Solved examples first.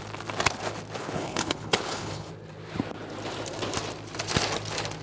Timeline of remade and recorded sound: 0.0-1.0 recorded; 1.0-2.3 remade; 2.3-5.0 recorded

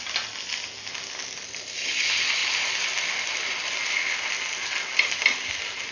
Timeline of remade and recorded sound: 0.0-2.4 recorded; 2.4-3.0 remade; 3.0-5.9 recorded

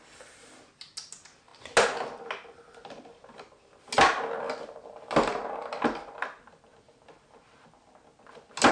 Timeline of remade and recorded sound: 0.0-8.7 recorded

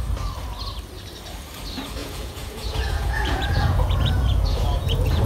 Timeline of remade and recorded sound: 0.0-2.0 recorded; 2.0-5.3 remade

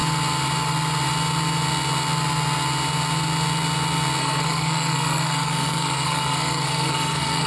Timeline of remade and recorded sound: 0.0-4.2 recorded; 4.2-7.5 remade

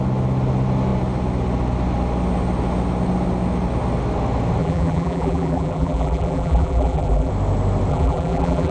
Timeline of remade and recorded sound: 0.0-4.6 recorded; 4.6-7.3 remade; 7.3-7.9 recorded; 7.9-8.7 remade

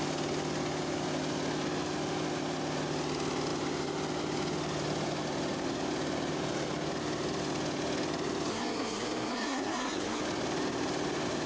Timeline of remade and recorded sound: 0.0-8.5 recorded; 8.5-10.2 remade; 10.2-11.5 recorded

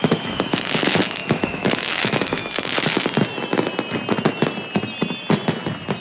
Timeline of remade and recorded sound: 0.0-2.4 remade; 2.4-6.0 recorded